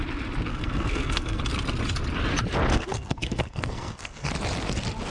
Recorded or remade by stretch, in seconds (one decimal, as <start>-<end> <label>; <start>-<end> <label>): 0.0-0.5 recorded; 0.5-1.4 remade; 1.4-2.7 recorded; 2.7-4.3 remade; 4.3-5.1 recorded